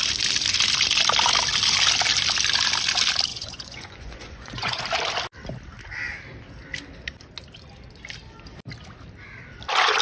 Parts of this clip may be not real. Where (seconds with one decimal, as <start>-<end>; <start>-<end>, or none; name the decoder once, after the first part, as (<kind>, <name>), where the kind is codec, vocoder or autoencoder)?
3.3-4.8 (vocoder, Vocos)